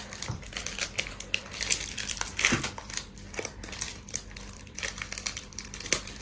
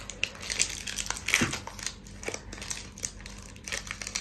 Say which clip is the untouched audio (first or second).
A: second